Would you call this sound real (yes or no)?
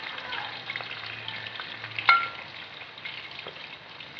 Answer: yes